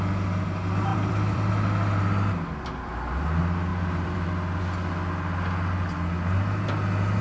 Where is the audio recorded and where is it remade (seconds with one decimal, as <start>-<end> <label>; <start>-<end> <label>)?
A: 0.0-0.9 recorded; 0.9-1.5 remade; 1.5-3.7 recorded; 3.7-4.6 remade; 4.6-7.2 recorded